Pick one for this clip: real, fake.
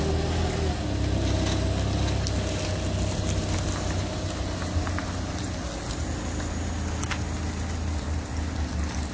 real